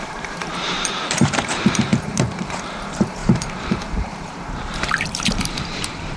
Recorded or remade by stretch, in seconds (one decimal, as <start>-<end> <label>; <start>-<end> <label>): 0.0-6.2 remade